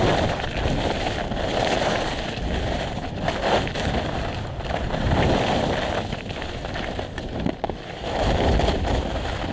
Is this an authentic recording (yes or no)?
yes